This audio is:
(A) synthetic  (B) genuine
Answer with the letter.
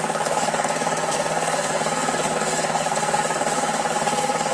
A